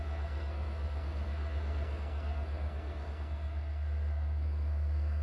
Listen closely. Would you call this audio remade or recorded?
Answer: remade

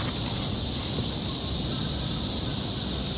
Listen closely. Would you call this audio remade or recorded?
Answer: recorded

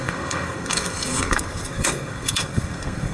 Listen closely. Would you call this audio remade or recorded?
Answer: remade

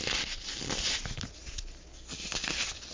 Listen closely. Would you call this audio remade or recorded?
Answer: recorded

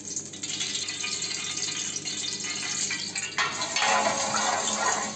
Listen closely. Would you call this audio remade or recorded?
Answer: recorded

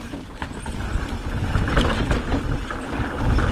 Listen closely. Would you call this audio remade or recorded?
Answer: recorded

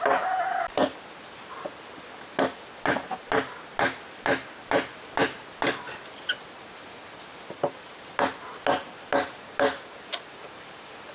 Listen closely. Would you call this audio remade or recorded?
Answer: recorded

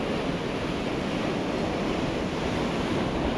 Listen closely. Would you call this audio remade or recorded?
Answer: recorded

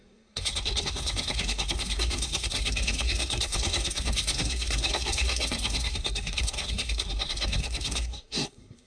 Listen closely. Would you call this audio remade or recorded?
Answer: remade